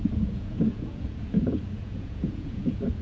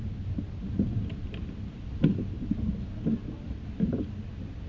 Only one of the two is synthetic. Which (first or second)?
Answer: first